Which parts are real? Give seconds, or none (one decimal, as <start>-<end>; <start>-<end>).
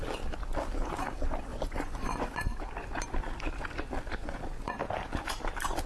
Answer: 0.0-1.5; 2.4-4.2; 4.8-5.9